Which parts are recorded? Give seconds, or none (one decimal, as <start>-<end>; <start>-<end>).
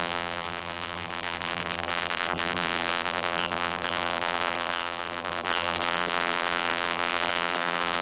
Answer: none